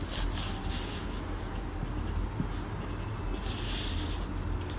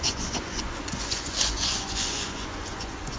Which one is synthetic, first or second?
second